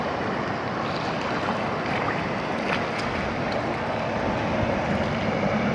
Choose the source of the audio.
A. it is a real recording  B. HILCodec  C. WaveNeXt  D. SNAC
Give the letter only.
A